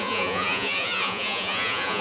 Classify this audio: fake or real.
fake